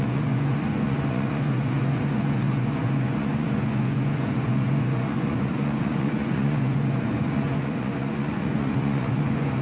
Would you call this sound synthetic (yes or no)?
yes